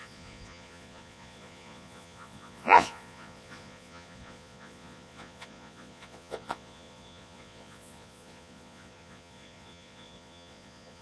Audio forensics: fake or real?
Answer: fake